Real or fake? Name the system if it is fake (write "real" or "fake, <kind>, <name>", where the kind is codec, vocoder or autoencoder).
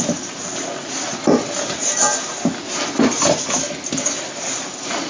real